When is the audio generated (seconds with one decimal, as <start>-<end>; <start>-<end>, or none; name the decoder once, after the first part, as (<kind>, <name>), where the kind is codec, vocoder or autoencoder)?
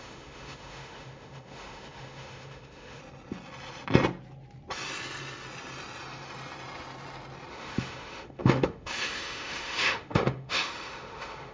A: 0.0-3.0 (autoencoder, DAC-VAE); 7.5-11.5